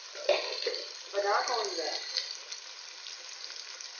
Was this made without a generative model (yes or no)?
yes